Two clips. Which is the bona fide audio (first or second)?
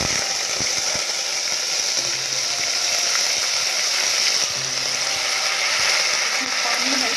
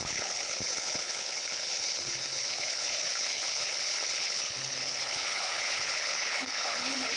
first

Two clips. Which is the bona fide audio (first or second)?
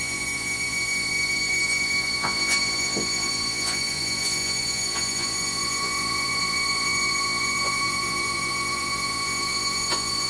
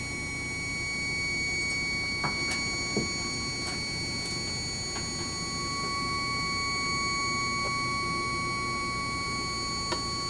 second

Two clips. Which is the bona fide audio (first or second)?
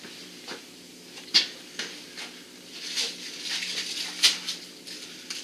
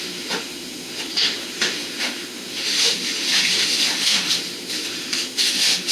first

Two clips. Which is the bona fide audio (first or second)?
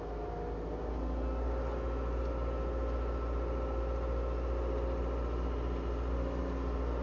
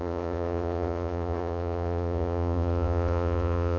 first